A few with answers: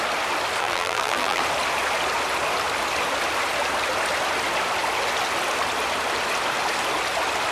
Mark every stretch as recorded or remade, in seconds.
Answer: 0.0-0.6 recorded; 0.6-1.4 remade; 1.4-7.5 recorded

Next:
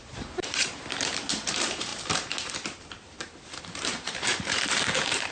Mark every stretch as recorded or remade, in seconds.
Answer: 0.0-5.3 remade